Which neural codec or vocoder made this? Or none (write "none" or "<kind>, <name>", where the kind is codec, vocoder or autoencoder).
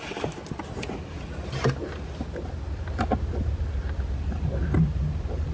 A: none